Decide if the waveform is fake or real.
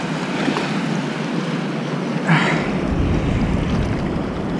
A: real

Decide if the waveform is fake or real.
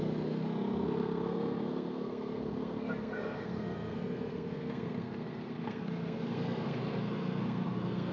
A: fake